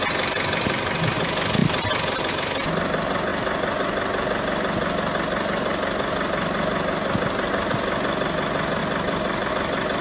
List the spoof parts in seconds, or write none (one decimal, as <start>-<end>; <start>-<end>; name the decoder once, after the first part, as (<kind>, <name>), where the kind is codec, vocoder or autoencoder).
none